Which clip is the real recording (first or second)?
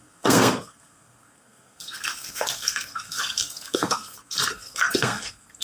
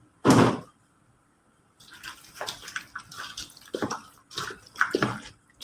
second